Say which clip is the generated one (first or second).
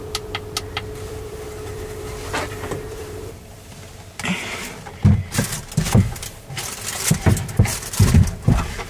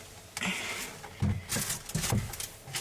first